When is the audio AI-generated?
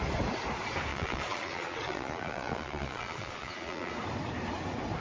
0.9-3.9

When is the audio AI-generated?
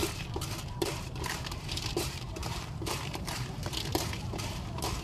0.0-5.0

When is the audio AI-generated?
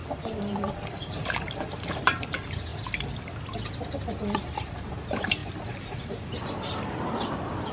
0.0-2.7; 4.4-5.4; 6.0-7.7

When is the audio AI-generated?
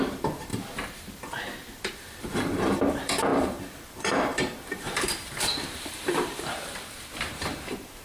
0.0-0.5; 1.9-8.0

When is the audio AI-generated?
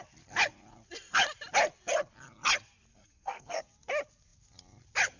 2.9-3.6